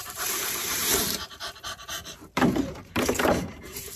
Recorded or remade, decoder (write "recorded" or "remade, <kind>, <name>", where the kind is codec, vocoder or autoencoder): remade, vocoder, BigVGAN v2